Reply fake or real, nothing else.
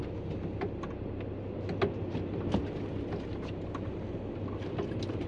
real